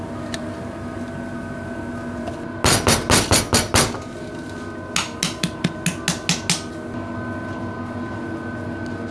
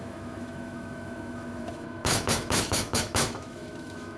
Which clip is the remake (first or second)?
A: second